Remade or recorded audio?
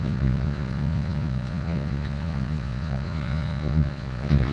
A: remade